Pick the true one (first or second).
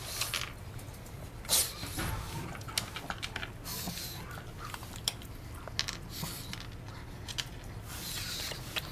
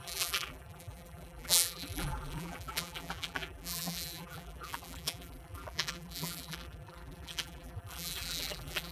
first